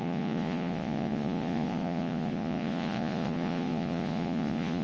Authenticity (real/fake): fake